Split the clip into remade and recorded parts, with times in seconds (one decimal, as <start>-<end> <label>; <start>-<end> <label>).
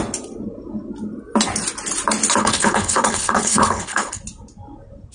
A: 0.0-2.4 recorded; 2.4-4.2 remade; 4.2-5.1 recorded